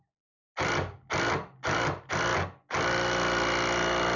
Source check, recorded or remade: recorded